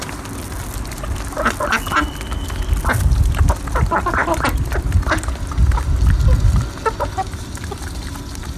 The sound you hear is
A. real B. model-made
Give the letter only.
A